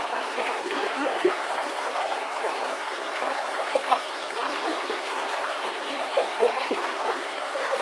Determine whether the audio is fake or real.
fake